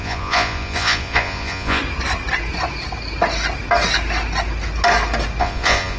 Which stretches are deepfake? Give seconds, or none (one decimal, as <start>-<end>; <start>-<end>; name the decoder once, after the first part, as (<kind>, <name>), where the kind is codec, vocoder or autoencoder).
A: 0.0-1.8 (vocoder, Vocos); 5.4-6.0